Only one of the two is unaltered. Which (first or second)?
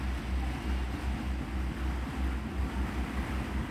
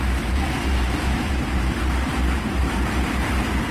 first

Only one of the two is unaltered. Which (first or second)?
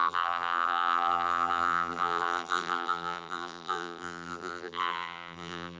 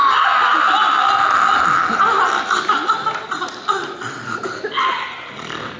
second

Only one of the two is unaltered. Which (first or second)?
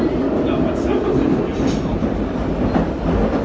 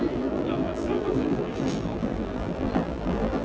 first